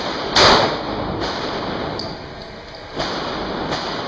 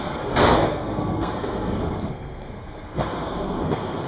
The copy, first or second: second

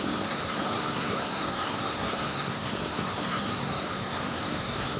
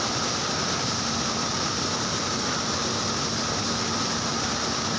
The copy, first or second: first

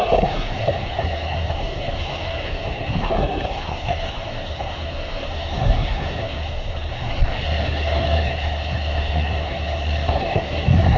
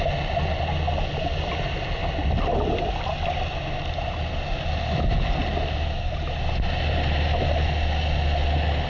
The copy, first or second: first